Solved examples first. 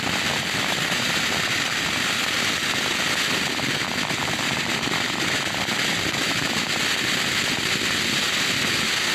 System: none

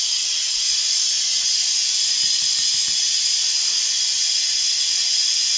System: none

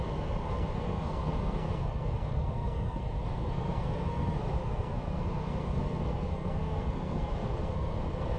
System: codec, SNAC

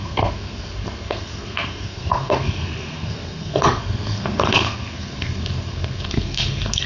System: codec, SNAC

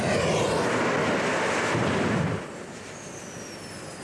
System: none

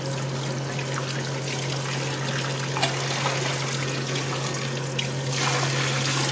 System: none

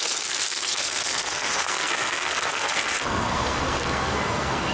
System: codec, SNAC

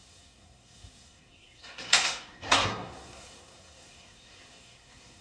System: codec, SNAC